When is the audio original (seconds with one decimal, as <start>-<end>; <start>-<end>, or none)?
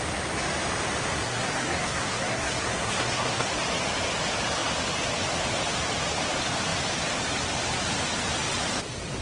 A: 0.0-1.1; 3.5-9.2